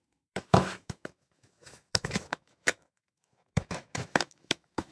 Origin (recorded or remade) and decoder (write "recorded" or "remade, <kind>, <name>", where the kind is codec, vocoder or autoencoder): remade, autoencoder, DAC-VAE